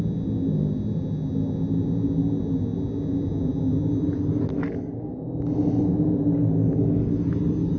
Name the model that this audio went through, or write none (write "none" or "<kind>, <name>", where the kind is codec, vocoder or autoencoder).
none